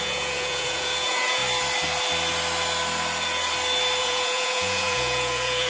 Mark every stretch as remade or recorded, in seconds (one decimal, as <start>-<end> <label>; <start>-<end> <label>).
0.0-1.4 remade; 1.4-4.0 recorded; 4.0-5.7 remade